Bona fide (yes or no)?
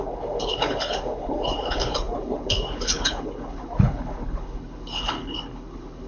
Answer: no